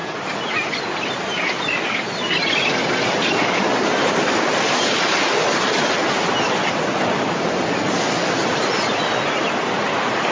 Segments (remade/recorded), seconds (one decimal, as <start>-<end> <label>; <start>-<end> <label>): 0.0-10.3 recorded